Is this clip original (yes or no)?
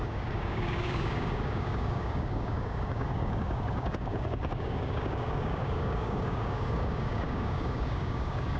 no